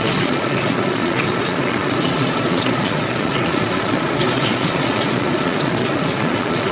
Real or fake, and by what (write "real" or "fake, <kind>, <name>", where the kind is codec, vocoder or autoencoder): fake, vocoder, Vocos